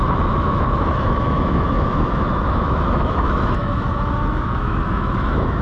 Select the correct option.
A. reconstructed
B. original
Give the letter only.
A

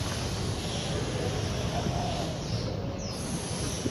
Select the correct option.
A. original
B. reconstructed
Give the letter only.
A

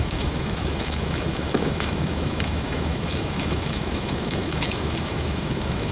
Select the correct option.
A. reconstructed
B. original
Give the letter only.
A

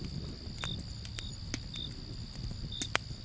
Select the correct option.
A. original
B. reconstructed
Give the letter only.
A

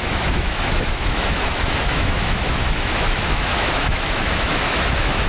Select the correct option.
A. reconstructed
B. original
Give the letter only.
A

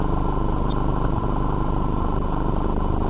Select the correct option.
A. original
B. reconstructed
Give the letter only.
A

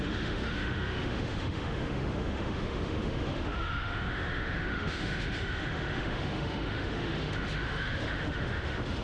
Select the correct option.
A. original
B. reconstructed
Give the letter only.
B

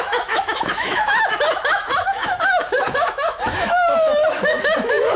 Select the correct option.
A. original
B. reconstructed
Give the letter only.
B